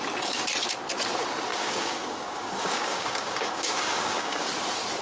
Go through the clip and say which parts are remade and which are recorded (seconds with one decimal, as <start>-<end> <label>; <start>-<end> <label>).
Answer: 0.0-1.5 recorded; 1.5-4.5 remade; 4.5-5.0 recorded